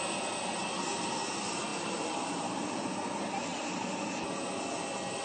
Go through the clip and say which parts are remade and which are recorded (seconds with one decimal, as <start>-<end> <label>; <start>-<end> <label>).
0.0-1.7 recorded; 1.7-2.8 remade; 2.8-5.2 recorded